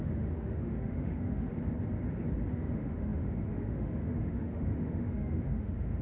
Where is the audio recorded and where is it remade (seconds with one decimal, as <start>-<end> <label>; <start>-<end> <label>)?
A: 0.0-1.5 remade; 1.5-2.5 recorded; 2.5-6.0 remade